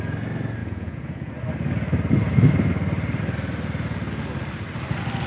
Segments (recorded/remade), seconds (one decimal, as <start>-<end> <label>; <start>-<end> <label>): 0.0-0.6 recorded; 0.6-1.3 remade; 1.3-5.3 recorded